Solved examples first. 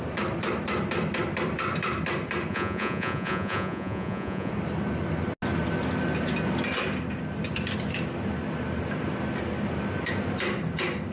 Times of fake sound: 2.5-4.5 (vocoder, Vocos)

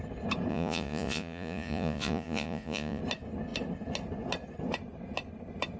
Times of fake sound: 0.5-3.0 (vocoder, Vocos)

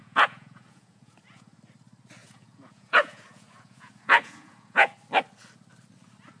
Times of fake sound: 0.0-1.6 (vocoder, Vocos); 2.2-4.9

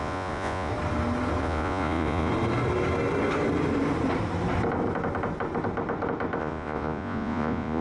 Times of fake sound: 0.0-0.7 (vocoder, Vocos); 1.4-2.3; 6.4-7.8

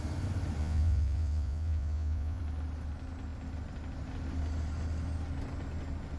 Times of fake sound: 0.6-2.4 (vocoder, Vocos)